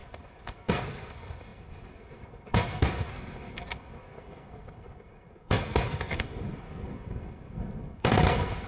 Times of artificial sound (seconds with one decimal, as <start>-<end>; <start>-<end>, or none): 0.0-8.7